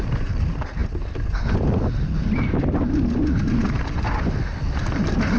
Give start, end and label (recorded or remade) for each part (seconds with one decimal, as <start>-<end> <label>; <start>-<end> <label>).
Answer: 0.0-0.8 remade; 0.8-4.0 recorded; 4.0-5.4 remade